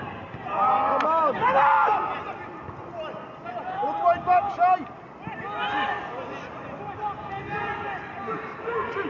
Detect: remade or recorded recorded